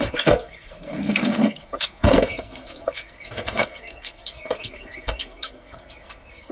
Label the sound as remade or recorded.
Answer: remade